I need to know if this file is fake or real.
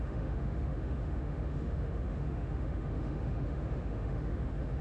fake